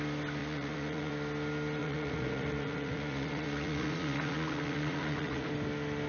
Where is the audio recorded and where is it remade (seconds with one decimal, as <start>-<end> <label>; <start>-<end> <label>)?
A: 0.0-0.4 recorded; 0.4-1.1 remade; 1.1-1.8 recorded; 1.8-5.5 remade; 5.5-6.1 recorded